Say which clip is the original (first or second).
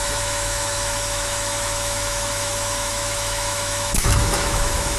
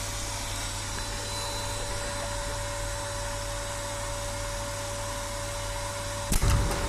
second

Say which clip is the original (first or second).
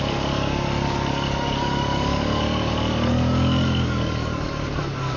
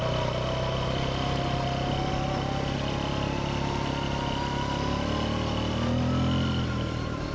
second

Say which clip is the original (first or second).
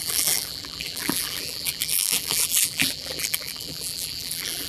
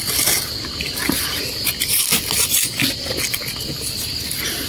second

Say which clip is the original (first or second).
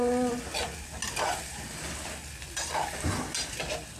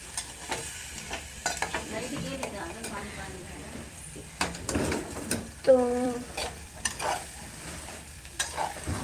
first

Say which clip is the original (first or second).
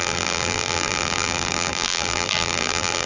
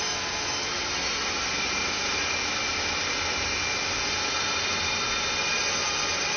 second